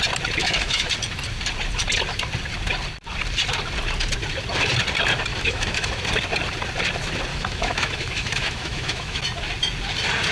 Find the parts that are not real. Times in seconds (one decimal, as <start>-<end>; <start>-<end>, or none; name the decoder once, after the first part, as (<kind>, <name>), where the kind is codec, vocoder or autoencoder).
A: 0.4-0.9 (autoencoder, DAC-VAE); 5.3-5.9; 7.3-9.2